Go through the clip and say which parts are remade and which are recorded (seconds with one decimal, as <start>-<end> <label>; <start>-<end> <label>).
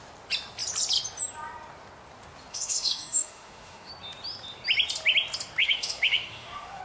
0.0-2.5 recorded; 2.5-3.9 remade; 3.9-5.6 recorded; 5.6-6.8 remade